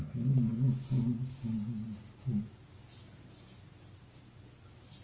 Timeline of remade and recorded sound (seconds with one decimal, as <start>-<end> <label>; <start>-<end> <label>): 0.0-5.0 recorded